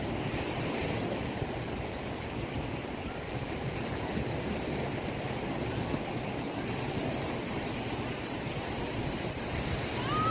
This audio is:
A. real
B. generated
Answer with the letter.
A